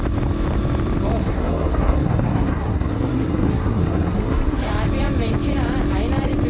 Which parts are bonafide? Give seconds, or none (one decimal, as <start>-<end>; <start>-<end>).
0.0-1.2; 4.7-6.5